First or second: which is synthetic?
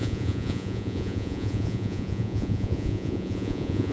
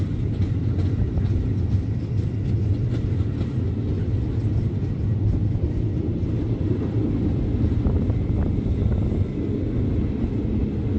first